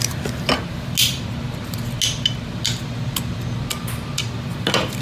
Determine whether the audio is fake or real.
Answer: real